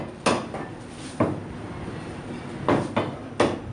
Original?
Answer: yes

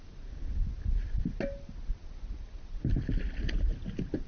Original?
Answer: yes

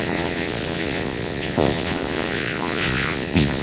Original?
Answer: no